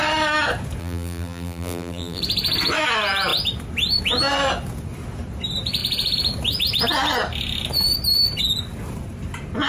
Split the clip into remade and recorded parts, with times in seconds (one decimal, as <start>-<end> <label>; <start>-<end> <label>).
0.0-0.8 recorded; 0.8-2.2 remade; 2.2-9.7 recorded